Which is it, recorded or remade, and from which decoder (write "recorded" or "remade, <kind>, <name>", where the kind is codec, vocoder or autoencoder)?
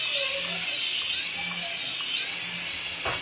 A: recorded